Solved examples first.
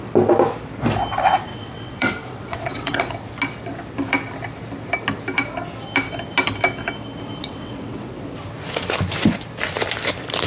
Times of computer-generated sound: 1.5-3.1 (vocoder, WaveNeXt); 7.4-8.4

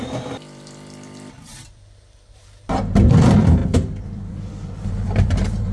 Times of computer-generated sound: 0.0-5.7 (vocoder, BigVGAN v2)

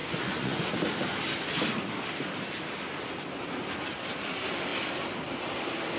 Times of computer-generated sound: 0.0-0.7 (vocoder, Vocos)

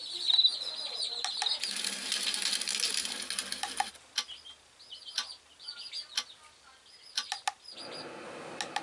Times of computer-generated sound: none

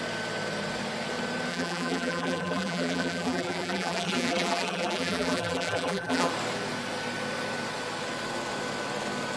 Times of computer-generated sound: 1.5-6.3 (vocoder, BigVGAN v2)